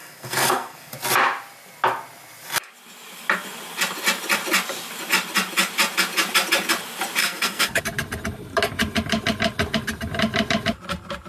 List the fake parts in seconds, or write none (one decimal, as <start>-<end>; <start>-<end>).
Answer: 0.0-0.9; 7.2-7.8